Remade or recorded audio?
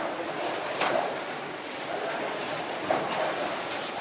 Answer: remade